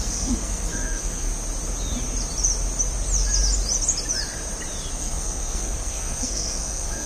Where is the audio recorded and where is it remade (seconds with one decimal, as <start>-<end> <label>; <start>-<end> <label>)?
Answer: 0.0-1.3 remade; 1.3-4.9 recorded; 4.9-7.1 remade